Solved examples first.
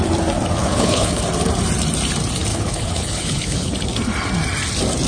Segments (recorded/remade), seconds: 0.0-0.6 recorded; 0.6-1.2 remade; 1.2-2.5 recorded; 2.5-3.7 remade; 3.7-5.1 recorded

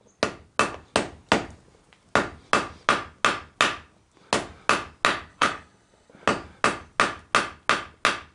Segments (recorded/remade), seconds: 0.0-5.3 recorded; 5.3-6.1 remade; 6.1-8.3 recorded